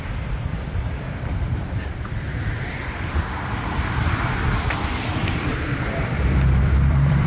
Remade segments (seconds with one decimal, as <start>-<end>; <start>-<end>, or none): 0.5-4.3; 5.1-7.3